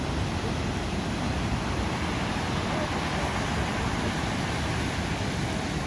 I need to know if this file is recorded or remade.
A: recorded